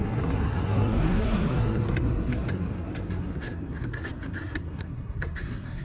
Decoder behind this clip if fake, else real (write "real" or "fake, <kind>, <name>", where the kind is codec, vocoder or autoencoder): fake, codec, SNAC